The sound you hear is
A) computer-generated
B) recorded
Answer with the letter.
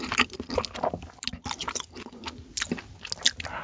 B